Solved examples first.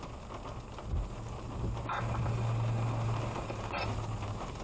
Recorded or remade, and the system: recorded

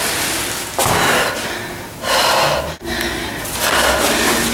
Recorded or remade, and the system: recorded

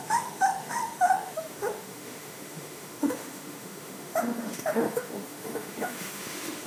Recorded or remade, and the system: remade, autoencoder, DAC-VAE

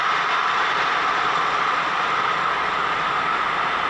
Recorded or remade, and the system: remade, vocoder, BigVGAN v2